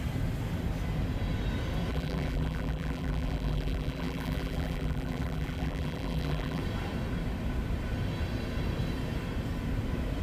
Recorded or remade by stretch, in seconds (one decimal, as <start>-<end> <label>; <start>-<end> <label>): 0.0-1.9 recorded; 1.9-6.6 remade; 6.6-10.2 recorded